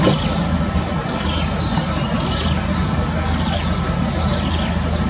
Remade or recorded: recorded